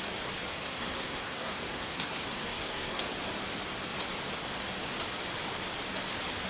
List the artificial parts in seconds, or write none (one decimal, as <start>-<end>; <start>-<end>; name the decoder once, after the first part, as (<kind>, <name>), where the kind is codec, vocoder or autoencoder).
0.5-3.0 (codec, SNAC)